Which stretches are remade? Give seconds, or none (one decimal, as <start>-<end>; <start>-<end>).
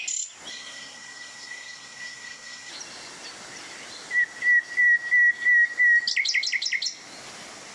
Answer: 0.5-2.7